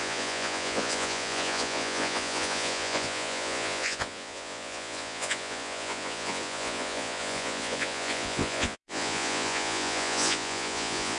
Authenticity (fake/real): fake